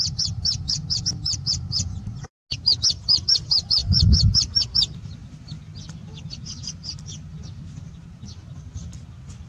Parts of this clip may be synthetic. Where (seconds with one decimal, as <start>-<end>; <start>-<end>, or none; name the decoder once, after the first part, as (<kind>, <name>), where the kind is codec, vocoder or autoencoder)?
none